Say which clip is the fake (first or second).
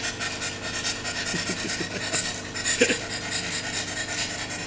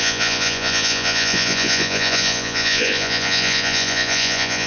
second